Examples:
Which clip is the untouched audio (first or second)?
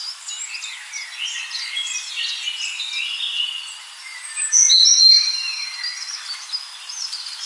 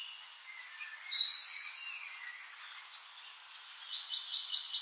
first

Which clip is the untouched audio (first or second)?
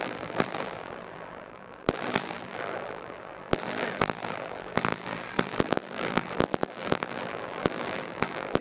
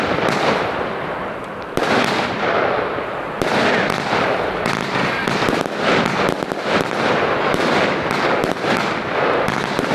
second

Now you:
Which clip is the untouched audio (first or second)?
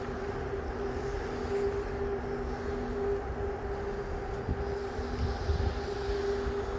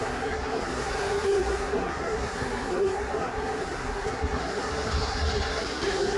first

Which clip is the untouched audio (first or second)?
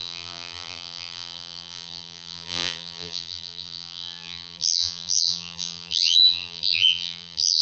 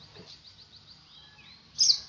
second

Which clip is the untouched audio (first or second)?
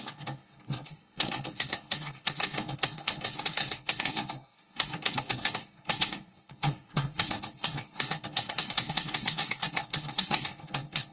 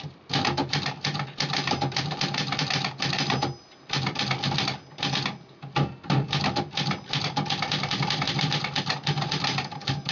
second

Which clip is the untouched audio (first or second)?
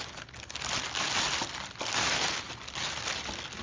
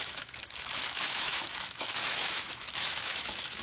first